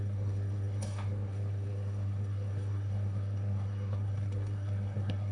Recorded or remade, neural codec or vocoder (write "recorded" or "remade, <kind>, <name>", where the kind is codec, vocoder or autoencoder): remade, codec, SNAC